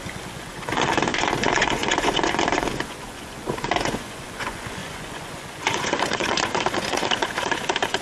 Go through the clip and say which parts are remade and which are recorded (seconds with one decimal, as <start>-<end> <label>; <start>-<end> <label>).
0.0-8.0 remade